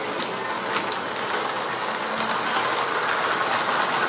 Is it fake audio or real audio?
real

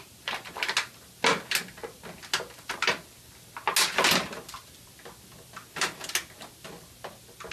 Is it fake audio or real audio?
real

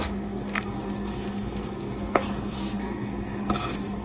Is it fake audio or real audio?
fake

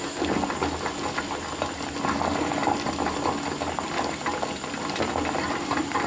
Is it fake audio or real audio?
real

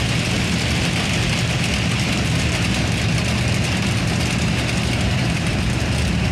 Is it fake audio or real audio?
real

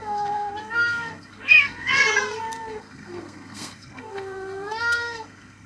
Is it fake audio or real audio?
fake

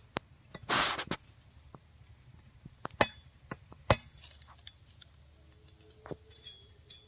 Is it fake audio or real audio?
real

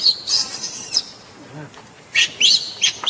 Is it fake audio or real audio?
real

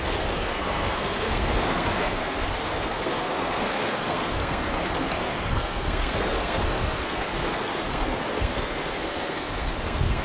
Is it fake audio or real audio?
fake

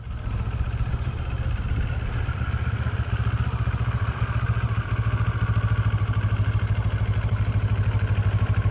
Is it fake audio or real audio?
real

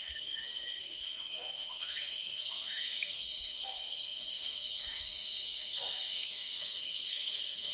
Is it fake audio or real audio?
fake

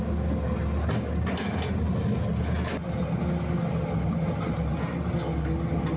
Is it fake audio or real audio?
real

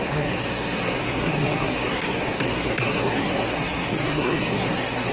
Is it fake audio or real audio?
fake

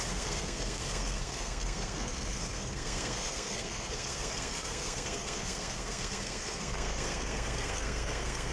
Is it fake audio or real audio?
fake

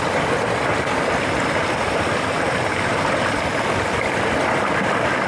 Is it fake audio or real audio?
real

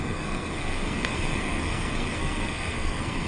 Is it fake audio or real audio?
fake